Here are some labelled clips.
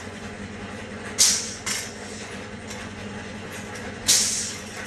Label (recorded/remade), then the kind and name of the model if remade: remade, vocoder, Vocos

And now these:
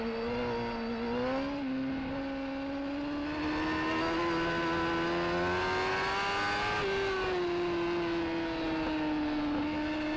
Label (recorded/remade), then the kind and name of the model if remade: recorded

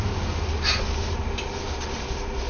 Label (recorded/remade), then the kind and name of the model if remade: recorded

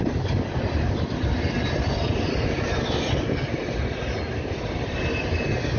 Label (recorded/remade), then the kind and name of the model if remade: recorded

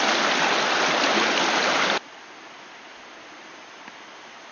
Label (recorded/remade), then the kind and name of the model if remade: recorded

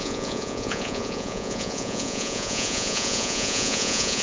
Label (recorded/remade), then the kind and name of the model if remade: remade, vocoder, Vocos